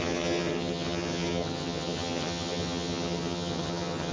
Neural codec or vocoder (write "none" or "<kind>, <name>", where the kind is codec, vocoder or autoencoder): vocoder, HiFi-GAN